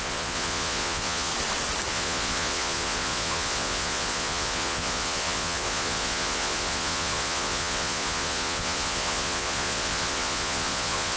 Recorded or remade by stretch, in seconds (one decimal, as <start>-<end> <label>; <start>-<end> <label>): 0.0-1.3 remade; 1.3-1.9 recorded; 1.9-11.2 remade